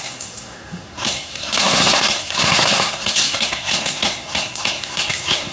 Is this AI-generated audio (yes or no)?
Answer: yes